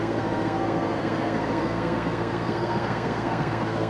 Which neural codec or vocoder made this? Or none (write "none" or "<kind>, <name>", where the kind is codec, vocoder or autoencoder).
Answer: codec, SNAC